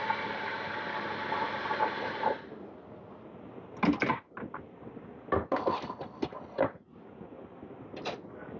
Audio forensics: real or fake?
real